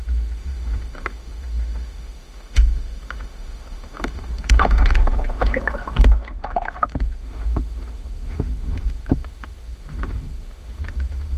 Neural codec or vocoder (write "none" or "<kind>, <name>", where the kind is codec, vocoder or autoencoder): autoencoder, DAC-VAE